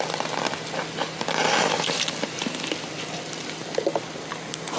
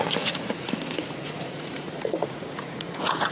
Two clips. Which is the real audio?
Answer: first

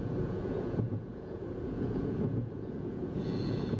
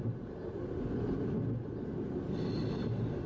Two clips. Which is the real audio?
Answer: second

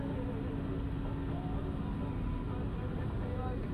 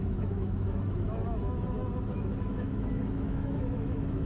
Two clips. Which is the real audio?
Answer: first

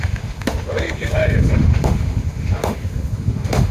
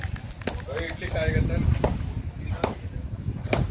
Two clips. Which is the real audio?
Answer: second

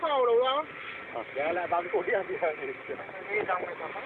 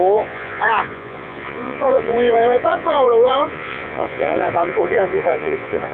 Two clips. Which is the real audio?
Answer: first